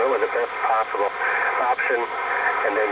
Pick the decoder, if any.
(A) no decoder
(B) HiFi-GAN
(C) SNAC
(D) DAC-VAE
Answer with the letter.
A